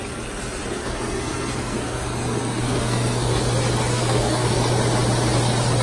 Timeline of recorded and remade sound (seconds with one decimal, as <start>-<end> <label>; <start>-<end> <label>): 0.0-0.8 recorded; 0.8-3.4 remade; 3.4-3.9 recorded; 3.9-4.6 remade; 4.6-5.8 recorded